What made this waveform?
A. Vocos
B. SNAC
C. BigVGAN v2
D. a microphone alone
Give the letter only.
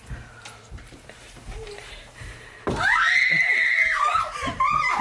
C